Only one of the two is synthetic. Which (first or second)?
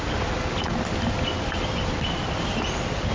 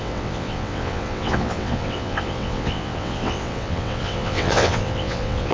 second